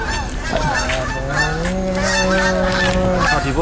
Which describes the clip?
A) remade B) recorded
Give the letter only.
B